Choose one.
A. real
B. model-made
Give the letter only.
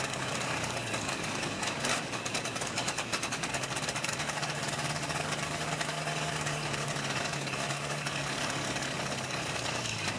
B